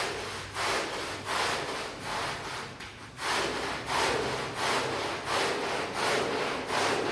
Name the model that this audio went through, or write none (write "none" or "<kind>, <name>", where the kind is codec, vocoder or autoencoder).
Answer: none